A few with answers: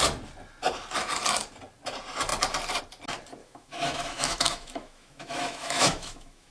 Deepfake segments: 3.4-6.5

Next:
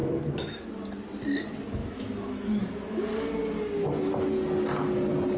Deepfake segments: 0.0-0.7; 1.8-3.0

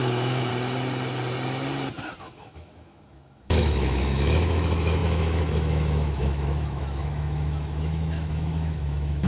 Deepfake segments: 0.0-0.5; 2.2-9.3